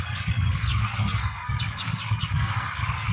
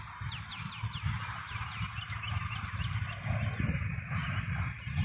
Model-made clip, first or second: first